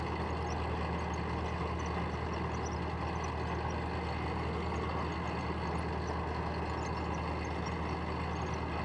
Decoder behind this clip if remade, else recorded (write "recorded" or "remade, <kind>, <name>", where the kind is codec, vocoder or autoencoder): recorded